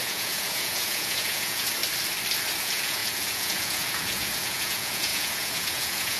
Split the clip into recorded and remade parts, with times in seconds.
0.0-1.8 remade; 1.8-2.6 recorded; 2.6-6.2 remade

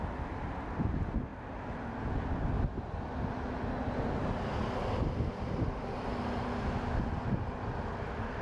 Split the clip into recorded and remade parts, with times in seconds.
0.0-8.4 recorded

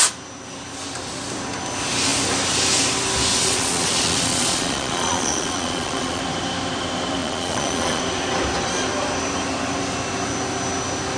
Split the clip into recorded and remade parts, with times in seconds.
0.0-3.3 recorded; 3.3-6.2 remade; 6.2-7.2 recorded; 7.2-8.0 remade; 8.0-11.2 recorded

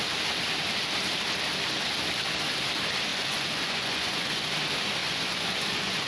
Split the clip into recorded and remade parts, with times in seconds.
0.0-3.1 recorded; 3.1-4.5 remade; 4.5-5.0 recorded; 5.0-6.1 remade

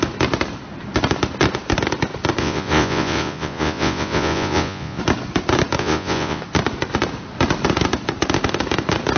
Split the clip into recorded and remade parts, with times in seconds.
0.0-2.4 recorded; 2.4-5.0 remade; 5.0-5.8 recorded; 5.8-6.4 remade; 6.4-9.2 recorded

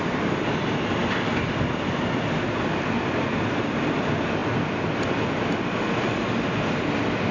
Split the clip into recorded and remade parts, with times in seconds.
0.0-7.3 recorded

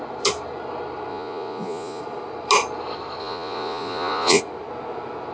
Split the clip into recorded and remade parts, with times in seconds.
0.0-1.1 recorded; 1.1-2.0 remade; 2.0-3.2 recorded; 3.2-4.4 remade; 4.4-5.3 recorded